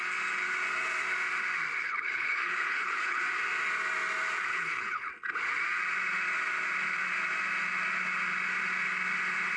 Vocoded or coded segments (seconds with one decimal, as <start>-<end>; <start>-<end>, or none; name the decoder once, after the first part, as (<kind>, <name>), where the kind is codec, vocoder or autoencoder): 1.8-3.2 (codec, HILCodec); 4.5-5.1